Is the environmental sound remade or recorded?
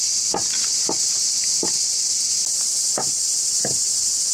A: recorded